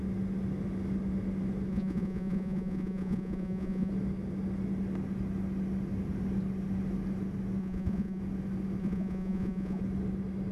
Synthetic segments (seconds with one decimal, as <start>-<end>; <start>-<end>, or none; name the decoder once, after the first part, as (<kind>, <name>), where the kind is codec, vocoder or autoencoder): 1.7-3.9 (vocoder, Vocos); 7.6-8.2; 8.8-9.8